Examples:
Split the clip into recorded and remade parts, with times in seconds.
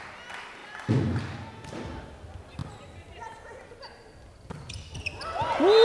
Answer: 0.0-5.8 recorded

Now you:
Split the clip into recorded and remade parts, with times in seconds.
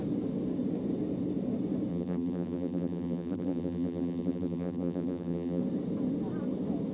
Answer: 0.0-1.9 recorded; 1.9-5.6 remade; 5.6-6.9 recorded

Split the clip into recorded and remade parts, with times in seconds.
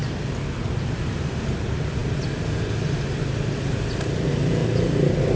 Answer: 0.0-5.4 recorded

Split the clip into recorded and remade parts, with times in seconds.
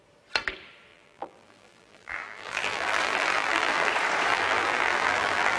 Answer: 0.0-0.9 recorded; 0.9-3.9 remade; 3.9-4.3 recorded; 4.3-5.6 remade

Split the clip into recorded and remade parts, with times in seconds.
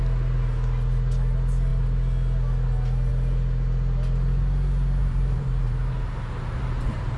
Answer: 0.0-5.0 recorded; 5.0-7.2 remade